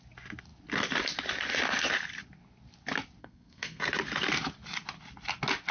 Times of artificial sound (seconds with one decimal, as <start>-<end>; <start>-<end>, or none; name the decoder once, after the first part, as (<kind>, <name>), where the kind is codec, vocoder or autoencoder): 3.2-3.8 (codec, SNAC)

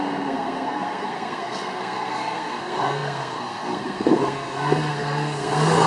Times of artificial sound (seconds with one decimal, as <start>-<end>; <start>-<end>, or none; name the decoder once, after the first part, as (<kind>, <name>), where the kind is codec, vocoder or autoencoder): 0.0-5.9 (codec, SNAC)